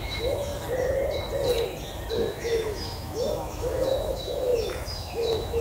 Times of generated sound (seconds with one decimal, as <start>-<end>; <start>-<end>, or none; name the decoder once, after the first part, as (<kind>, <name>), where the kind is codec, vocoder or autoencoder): 0.0-0.5 (autoencoder, DAC-VAE); 2.1-5.6

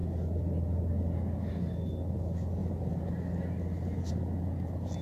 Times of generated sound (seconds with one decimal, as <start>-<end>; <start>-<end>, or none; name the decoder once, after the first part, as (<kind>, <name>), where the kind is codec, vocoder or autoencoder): none